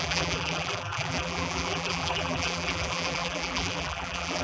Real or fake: fake